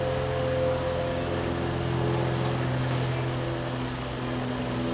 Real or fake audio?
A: real